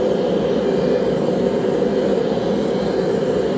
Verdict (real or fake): real